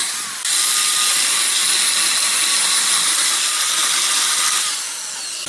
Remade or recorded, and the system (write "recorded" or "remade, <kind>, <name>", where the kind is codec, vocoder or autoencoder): recorded